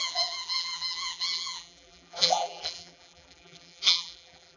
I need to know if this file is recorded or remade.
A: remade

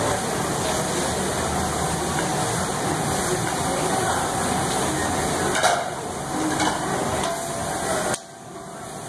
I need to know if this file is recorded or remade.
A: recorded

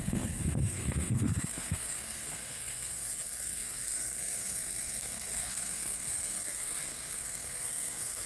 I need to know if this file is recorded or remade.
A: remade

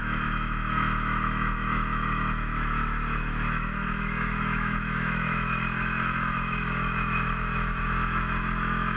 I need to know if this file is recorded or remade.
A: remade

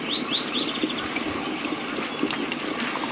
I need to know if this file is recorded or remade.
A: recorded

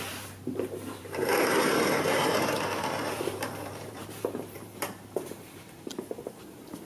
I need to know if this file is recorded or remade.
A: remade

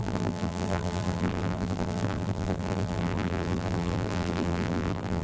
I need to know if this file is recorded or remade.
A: remade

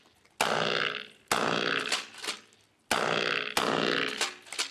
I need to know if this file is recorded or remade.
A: recorded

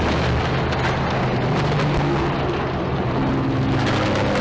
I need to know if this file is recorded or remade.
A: recorded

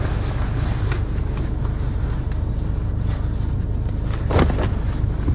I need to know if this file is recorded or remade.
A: recorded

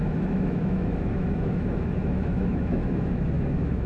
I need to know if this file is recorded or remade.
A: remade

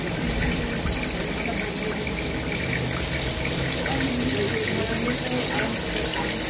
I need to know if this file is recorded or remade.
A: recorded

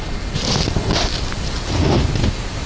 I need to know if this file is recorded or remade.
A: recorded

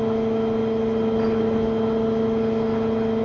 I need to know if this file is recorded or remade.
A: recorded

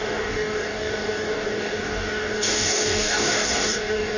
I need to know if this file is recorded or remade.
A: remade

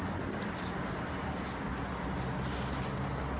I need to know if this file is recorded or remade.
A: recorded